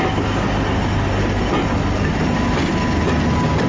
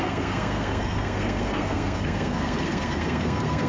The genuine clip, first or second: first